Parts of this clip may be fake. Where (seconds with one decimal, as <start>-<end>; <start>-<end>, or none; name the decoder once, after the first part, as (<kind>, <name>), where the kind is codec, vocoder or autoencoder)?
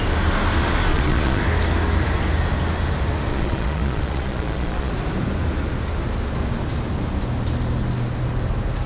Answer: 0.9-1.4 (vocoder, Vocos); 3.3-4.9